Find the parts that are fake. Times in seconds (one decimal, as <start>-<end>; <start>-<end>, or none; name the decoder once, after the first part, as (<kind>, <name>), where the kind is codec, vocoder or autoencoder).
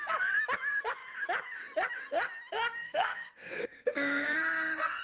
2.7-5.0 (codec, SNAC)